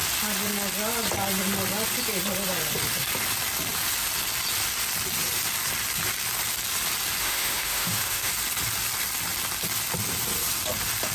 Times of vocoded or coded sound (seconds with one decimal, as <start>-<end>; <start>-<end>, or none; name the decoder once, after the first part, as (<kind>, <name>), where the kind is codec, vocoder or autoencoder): 7.2-8.3 (autoencoder, DAC-VAE)